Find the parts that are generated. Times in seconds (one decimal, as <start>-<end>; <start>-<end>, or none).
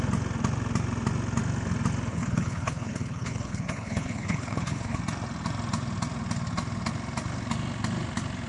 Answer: 2.1-5.0